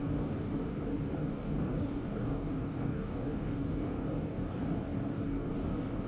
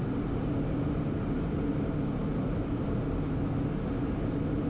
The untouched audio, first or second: second